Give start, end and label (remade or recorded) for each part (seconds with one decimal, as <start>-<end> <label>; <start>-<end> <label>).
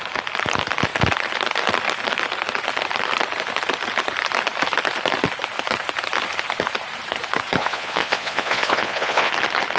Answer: 0.0-7.6 recorded; 7.6-9.3 remade; 9.3-9.8 recorded